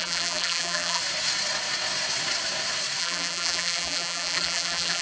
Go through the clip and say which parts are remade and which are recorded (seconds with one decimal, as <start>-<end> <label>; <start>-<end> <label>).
0.0-1.0 remade; 1.0-3.0 recorded; 3.0-5.0 remade